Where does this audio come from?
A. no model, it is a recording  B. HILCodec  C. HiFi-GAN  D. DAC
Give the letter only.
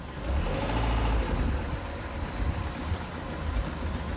A